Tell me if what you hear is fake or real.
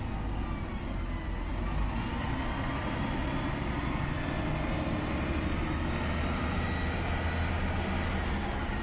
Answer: real